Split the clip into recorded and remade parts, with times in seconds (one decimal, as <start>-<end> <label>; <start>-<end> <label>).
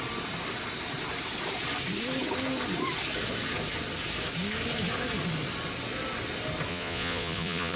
0.0-6.7 recorded; 6.7-7.8 remade